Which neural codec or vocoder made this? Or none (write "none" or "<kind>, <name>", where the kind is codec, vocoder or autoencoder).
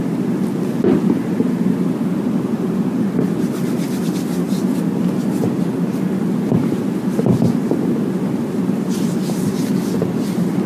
none